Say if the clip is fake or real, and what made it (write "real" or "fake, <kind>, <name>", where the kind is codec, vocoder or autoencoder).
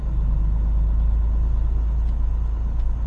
real